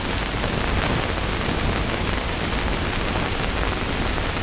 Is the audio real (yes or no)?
yes